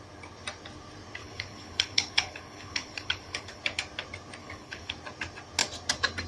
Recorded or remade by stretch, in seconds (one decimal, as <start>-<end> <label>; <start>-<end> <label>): 0.0-1.2 recorded; 1.2-3.6 remade; 3.6-4.4 recorded; 4.4-4.9 remade; 4.9-6.3 recorded